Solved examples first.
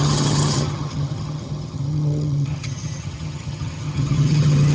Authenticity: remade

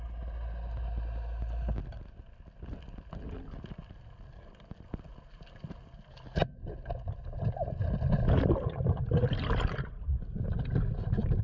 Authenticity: recorded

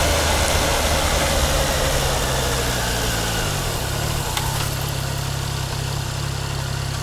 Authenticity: recorded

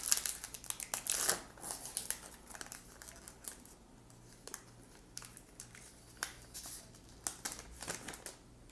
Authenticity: recorded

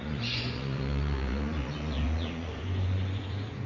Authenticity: remade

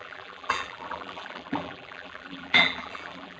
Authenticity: remade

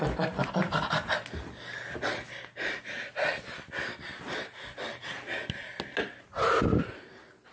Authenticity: recorded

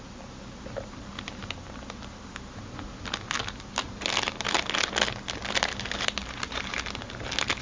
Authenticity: recorded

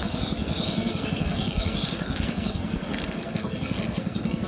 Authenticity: remade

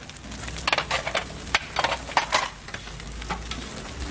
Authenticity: recorded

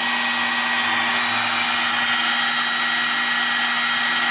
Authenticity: recorded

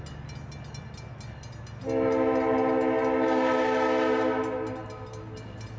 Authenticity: recorded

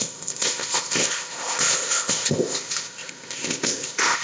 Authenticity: remade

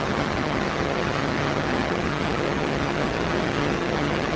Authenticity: remade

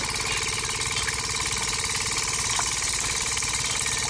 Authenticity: recorded